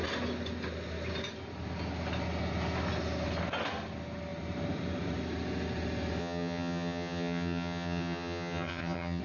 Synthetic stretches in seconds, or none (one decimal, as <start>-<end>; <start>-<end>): 6.2-9.2